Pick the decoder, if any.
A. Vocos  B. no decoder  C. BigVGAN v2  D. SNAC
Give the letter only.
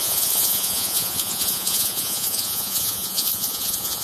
A